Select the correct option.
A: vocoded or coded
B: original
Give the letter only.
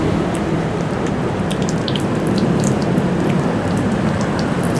A